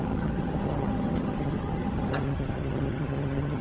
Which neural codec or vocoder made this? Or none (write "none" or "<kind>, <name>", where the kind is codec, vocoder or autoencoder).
vocoder, HiFi-GAN